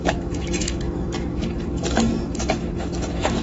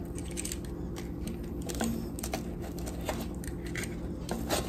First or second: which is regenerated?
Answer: first